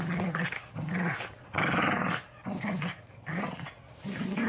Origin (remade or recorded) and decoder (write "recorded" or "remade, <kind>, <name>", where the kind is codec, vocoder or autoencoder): recorded